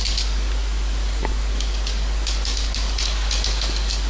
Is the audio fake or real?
fake